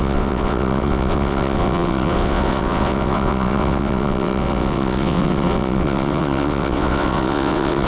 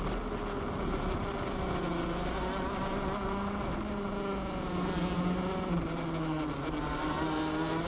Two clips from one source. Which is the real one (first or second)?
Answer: second